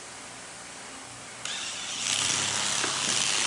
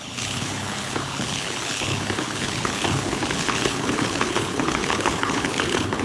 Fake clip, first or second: second